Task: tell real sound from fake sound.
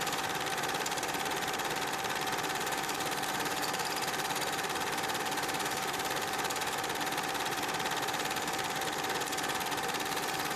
fake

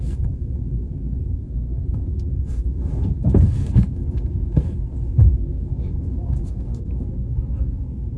fake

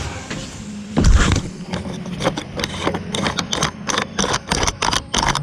fake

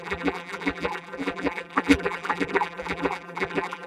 fake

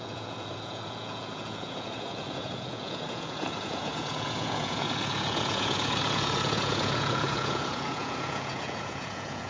fake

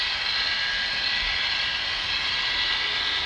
fake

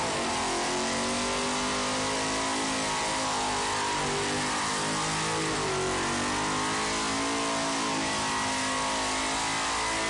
real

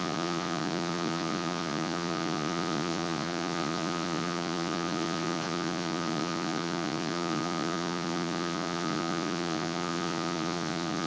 fake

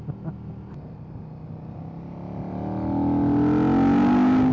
real